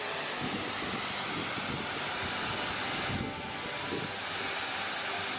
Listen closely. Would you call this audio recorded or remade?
recorded